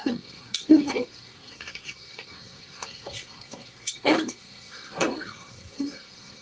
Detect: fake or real fake